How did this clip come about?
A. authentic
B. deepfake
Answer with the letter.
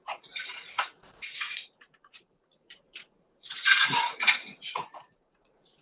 B